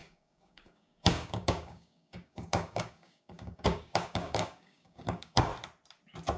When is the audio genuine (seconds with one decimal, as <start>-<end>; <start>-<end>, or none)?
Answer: 5.5-6.4